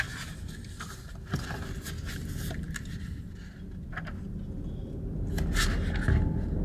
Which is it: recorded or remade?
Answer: recorded